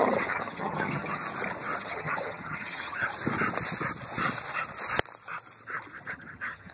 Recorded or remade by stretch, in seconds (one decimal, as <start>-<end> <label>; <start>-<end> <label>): 0.0-1.2 remade; 1.2-1.8 recorded; 1.8-3.1 remade; 3.1-6.1 recorded; 6.1-6.7 remade